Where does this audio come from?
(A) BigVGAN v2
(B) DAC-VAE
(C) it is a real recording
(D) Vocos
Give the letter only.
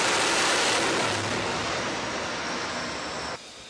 C